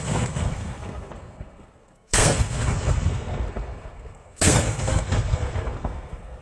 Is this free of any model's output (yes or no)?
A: no